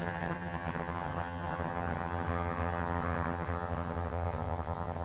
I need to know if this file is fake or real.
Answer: fake